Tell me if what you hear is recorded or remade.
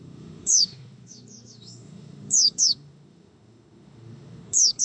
remade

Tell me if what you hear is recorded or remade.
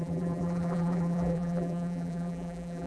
remade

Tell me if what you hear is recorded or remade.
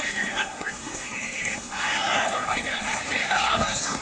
remade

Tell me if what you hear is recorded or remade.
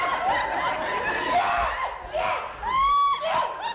recorded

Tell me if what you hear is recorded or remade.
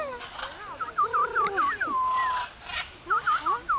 recorded